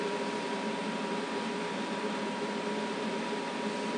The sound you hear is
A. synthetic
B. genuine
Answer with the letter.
A